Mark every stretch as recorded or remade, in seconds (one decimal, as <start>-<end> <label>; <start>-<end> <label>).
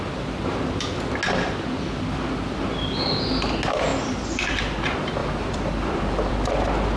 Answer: 0.0-3.9 recorded; 3.9-4.5 remade; 4.5-5.2 recorded; 5.2-6.3 remade; 6.3-7.0 recorded